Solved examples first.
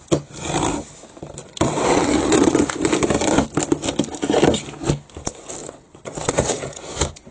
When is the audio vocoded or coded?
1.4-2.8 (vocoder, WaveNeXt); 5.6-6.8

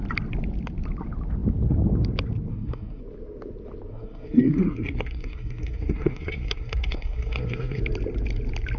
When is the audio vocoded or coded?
2.5-3.0 (codec, SNAC); 3.9-7.8

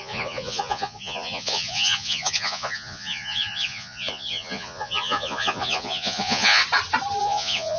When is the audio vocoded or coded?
0.0-6.6 (vocoder, Vocos); 7.2-7.8